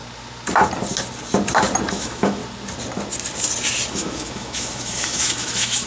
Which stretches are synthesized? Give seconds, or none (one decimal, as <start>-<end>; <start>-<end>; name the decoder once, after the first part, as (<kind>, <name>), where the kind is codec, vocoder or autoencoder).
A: 1.9-2.4 (autoencoder, DAC-VAE); 3.9-5.9